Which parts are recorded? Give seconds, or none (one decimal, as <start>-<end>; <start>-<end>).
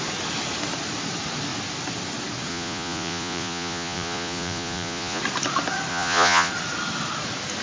0.0-2.5; 5.2-5.9; 6.5-7.6